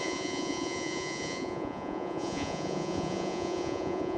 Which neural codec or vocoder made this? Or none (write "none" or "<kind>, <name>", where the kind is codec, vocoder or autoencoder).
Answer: vocoder, Vocos